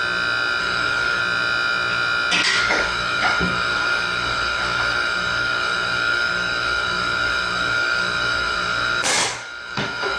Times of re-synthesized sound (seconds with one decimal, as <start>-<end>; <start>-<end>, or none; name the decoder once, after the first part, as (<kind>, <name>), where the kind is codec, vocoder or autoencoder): 0.6-1.2 (codec, DAC); 2.6-10.2

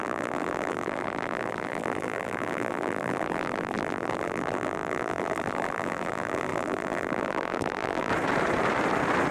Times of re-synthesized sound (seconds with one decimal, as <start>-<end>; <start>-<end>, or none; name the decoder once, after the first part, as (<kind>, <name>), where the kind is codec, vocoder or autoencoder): 0.0-8.1 (vocoder, BigVGAN v2)

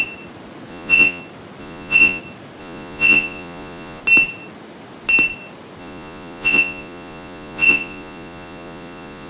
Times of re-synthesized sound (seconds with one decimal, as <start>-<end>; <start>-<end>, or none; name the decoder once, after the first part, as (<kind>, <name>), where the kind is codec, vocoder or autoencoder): 0.7-1.2 (vocoder, Vocos); 1.6-2.2; 2.6-4.0; 5.8-9.3

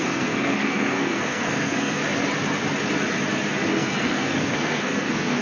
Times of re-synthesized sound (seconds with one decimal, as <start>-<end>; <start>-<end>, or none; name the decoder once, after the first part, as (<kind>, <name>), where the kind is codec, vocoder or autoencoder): 0.0-2.0 (codec, SNAC); 3.7-5.4

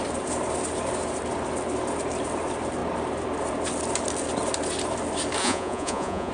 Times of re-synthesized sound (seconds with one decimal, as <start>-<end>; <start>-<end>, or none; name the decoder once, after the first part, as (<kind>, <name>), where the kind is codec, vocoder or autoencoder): 5.4-6.3 (vocoder, Vocos)